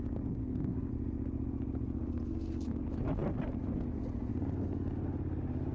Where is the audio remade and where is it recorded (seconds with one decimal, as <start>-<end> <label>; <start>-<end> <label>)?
0.0-0.4 recorded; 0.4-0.9 remade; 0.9-2.3 recorded; 2.3-2.8 remade; 2.8-5.7 recorded